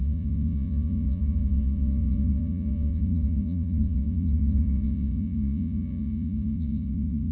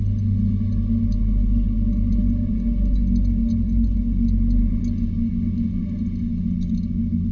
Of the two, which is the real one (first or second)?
second